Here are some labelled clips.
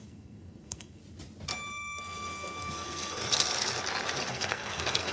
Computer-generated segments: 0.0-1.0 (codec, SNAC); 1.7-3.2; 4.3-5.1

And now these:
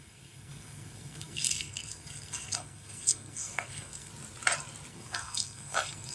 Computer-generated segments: 0.0-4.1 (codec, SNAC); 4.9-6.1

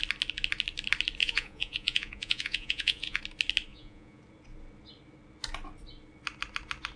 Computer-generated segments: 1.2-3.2 (vocoder, Vocos); 3.7-4.2

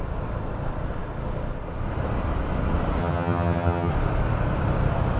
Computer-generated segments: 3.0-3.9 (vocoder, HiFi-GAN)